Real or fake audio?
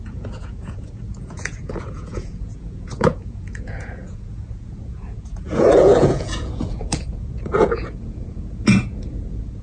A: fake